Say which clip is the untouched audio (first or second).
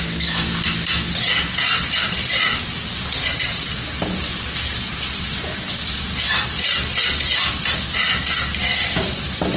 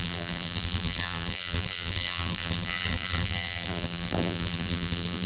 first